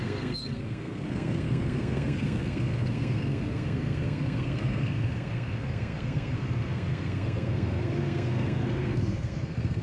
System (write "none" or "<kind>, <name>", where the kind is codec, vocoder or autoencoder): codec, SNAC